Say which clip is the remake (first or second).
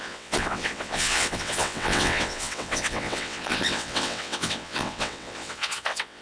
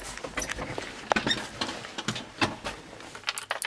first